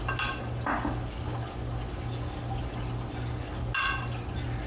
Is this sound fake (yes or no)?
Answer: no